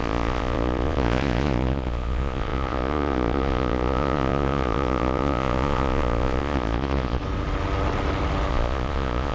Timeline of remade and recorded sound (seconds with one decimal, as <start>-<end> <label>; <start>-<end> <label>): 0.0-7.2 remade; 7.2-8.5 recorded; 8.5-9.3 remade

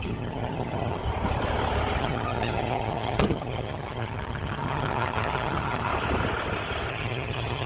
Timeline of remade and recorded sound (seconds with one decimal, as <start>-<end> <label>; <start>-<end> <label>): 0.0-1.0 remade; 1.0-2.0 recorded; 2.0-5.9 remade; 5.9-6.9 recorded; 6.9-7.7 remade